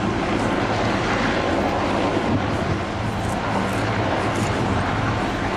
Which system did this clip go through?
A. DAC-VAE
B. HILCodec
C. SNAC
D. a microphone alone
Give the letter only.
D